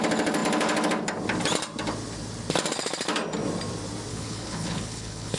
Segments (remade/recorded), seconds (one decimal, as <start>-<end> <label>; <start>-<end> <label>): 0.0-4.1 recorded; 4.1-5.4 remade